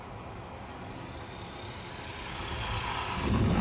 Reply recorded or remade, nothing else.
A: recorded